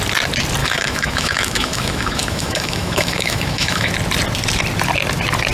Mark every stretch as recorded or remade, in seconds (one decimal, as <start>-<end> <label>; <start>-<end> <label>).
0.0-0.6 recorded; 0.6-3.9 remade; 3.9-5.5 recorded